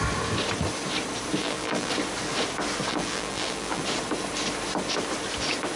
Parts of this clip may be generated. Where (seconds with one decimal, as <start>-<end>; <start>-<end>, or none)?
1.4-1.9; 2.9-3.8